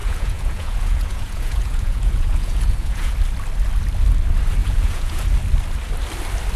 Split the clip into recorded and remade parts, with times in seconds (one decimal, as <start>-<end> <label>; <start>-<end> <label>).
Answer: 0.0-3.1 remade; 3.1-4.6 recorded; 4.6-5.2 remade; 5.2-6.6 recorded